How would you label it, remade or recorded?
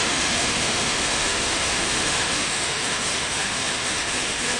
remade